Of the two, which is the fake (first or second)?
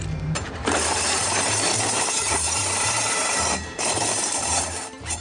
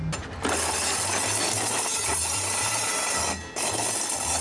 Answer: first